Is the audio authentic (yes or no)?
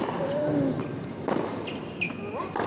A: yes